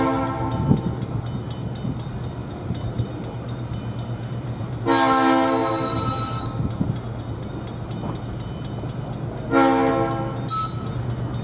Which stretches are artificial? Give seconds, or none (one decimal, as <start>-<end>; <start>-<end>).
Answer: 2.4-4.8; 5.6-7.2